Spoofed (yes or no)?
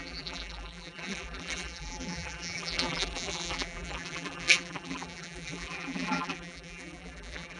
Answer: yes